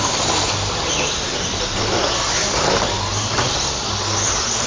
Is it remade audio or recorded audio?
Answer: recorded